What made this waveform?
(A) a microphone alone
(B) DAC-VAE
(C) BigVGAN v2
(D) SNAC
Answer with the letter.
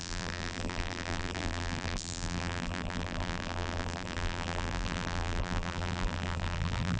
C